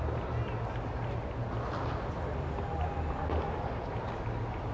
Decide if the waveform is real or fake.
real